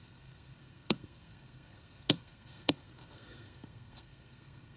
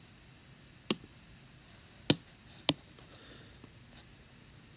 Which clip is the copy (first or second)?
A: first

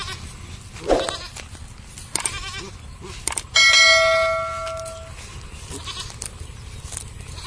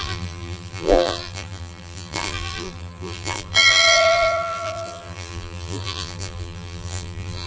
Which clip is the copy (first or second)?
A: second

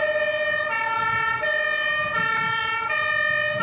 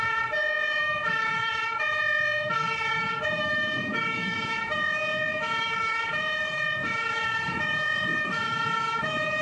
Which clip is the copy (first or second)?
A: second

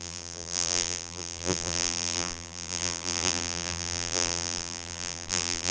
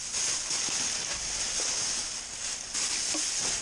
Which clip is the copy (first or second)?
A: first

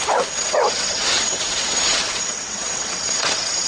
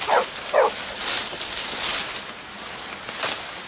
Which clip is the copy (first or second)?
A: first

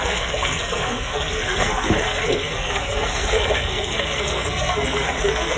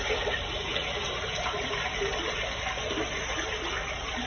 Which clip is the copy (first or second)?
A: first